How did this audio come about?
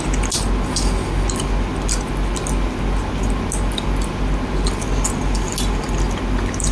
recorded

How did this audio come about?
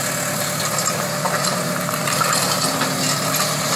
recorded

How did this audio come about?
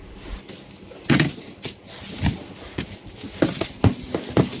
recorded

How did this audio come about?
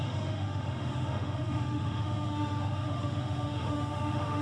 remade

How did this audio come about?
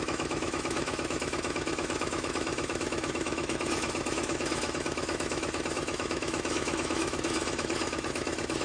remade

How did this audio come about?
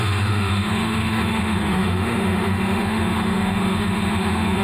remade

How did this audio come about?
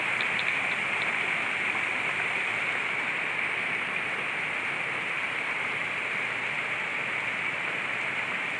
recorded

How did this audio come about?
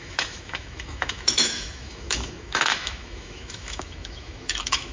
remade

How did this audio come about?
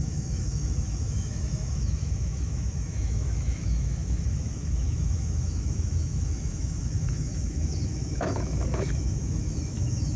remade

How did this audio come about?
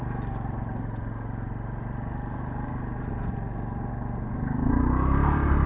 recorded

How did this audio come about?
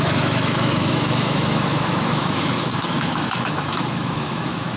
remade